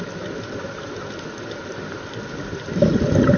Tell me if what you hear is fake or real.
real